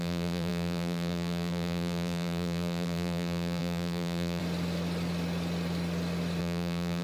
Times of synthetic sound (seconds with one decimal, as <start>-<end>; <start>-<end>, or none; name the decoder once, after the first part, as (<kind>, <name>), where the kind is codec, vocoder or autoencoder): 0.0-4.4 (vocoder, BigVGAN v2); 6.4-7.0